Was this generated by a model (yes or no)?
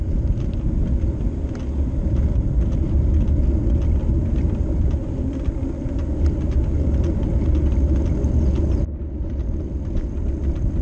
no